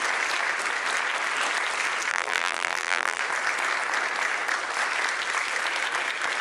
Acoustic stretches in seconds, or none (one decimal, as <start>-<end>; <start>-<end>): 0.0-2.1; 3.2-6.4